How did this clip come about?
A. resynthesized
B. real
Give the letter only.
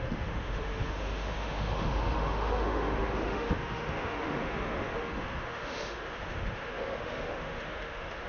A